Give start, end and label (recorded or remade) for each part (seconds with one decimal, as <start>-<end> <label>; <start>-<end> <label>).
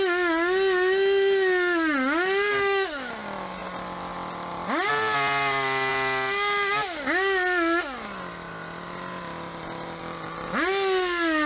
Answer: 0.0-2.5 recorded; 2.5-3.1 remade; 3.1-11.5 recorded